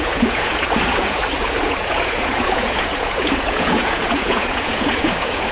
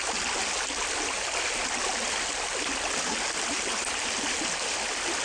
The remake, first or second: first